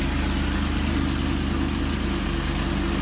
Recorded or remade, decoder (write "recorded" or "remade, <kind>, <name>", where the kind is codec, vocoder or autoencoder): recorded